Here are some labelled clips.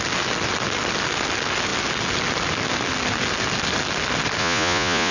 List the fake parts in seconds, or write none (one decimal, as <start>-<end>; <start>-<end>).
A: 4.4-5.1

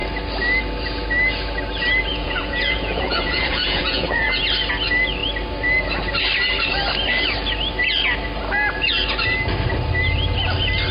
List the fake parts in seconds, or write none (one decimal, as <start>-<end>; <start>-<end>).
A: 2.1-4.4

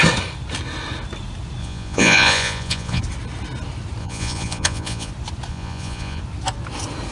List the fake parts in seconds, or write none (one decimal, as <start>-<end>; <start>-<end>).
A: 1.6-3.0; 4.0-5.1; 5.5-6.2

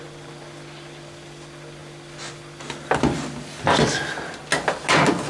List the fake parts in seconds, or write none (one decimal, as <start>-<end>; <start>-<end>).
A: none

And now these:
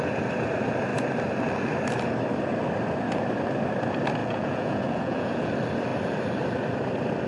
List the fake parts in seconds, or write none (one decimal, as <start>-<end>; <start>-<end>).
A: 4.2-5.5

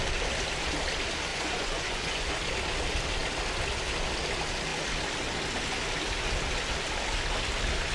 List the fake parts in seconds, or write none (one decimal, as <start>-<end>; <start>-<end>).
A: 1.3-2.3